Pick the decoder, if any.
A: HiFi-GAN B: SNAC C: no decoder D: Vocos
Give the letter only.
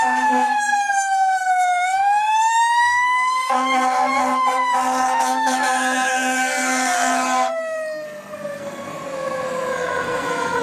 B